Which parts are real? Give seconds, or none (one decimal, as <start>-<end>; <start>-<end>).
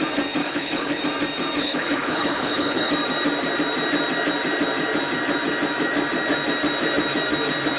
0.0-0.4; 1.0-1.6; 2.9-7.8